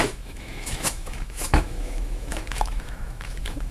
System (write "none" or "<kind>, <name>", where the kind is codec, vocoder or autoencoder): autoencoder, DAC-VAE